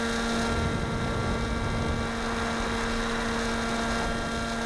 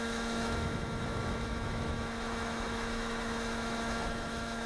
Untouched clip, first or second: first